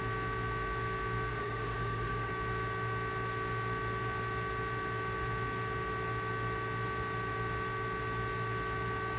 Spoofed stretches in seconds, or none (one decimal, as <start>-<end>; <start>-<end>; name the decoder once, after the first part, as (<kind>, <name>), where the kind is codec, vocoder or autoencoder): 1.3-2.3 (autoencoder, DAC-VAE)